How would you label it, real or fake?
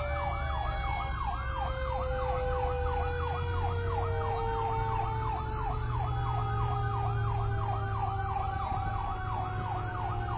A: real